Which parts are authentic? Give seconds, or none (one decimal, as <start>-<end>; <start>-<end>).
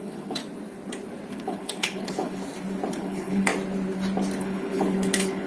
0.4-1.3; 2.4-2.9; 3.5-4.4